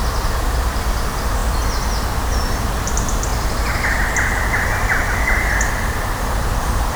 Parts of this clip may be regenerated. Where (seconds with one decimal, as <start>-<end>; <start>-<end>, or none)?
none